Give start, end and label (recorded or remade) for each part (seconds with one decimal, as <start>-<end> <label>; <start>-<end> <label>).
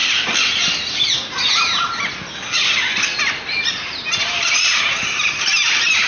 0.0-3.7 recorded; 3.7-6.1 remade